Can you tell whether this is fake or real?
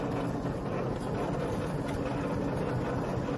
real